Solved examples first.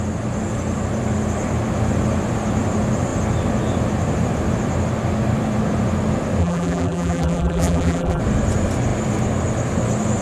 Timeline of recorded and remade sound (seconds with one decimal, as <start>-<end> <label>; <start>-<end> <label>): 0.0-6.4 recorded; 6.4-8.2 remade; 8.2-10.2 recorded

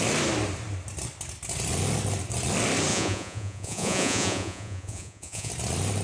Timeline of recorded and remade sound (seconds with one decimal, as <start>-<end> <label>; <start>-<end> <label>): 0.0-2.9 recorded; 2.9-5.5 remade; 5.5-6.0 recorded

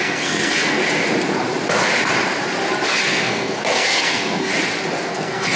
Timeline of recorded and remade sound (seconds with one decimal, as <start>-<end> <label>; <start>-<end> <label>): 0.0-0.8 remade; 0.8-3.0 recorded; 3.0-4.5 remade; 4.5-5.1 recorded; 5.1-5.6 remade

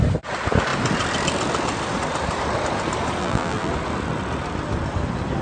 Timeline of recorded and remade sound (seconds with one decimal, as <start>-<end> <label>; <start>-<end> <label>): 0.0-3.2 recorded; 3.2-3.7 remade; 3.7-5.4 recorded

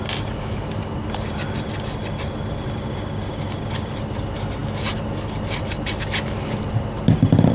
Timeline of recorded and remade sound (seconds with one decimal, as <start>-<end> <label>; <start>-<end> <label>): 0.0-7.5 recorded